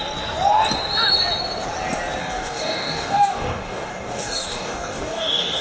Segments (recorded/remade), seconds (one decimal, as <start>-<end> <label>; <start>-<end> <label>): 0.0-2.2 recorded; 2.2-5.6 remade